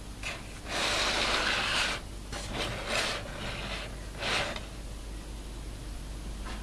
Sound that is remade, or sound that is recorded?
recorded